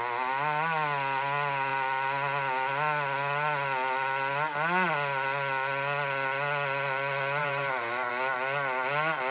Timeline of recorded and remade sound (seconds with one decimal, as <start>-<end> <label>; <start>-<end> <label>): 0.0-7.4 recorded; 7.4-8.1 remade; 8.1-9.3 recorded